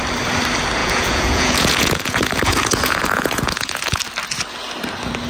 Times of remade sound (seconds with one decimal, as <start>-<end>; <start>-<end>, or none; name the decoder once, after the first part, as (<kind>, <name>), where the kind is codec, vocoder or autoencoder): 0.8-4.0 (vocoder, Vocos)